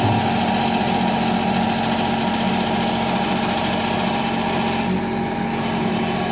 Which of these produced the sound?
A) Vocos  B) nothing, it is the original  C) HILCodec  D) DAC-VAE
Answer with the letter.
B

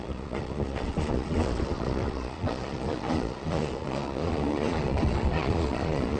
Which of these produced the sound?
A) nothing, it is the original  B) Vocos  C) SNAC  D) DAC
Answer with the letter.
B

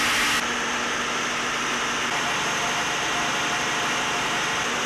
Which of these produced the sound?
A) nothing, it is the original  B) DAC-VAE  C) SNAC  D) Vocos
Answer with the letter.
A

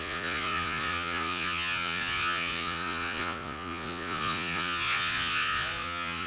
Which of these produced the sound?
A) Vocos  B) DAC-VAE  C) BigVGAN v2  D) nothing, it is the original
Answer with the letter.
A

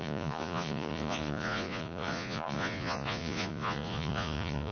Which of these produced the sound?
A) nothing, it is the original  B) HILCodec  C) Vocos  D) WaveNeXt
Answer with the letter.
C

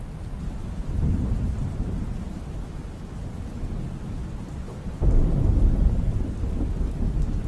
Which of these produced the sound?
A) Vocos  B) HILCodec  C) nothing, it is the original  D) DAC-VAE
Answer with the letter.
C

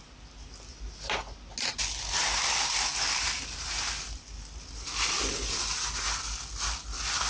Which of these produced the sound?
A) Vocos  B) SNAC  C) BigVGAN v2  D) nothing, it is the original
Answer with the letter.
D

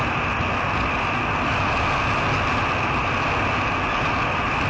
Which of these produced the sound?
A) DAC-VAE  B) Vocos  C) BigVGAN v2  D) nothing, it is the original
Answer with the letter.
D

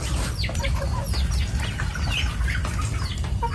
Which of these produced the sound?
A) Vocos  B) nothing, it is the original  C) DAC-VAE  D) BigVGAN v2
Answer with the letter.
B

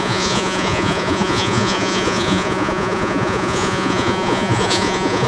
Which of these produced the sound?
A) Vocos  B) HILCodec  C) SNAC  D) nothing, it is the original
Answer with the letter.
A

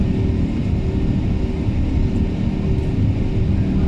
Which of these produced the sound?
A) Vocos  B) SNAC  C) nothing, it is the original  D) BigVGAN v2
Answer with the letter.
C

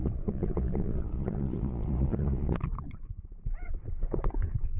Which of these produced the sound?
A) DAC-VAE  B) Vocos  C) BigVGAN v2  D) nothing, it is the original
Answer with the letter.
B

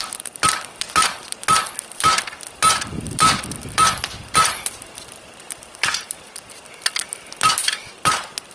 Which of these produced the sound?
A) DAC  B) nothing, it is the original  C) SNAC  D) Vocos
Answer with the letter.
B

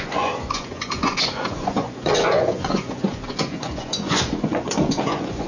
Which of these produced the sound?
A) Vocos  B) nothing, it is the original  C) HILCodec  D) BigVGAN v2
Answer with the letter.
A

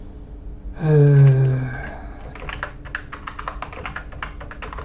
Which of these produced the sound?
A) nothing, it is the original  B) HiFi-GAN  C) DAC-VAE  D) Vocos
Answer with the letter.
A